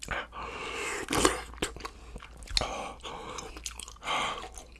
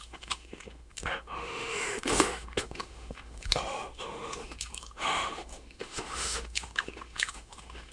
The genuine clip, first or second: first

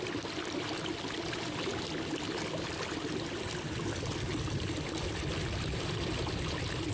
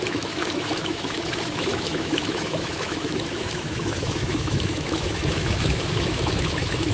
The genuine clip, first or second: first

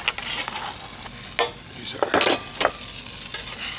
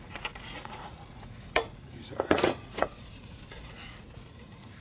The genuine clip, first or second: first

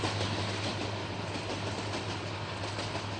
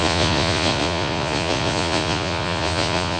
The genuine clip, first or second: first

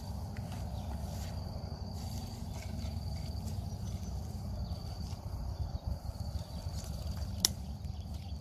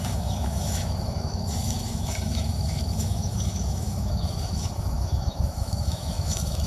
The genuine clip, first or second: first